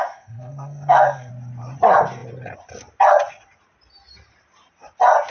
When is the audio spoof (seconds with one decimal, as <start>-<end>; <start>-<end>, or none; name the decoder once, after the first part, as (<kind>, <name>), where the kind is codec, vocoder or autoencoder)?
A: 0.0-1.3 (codec, SNAC)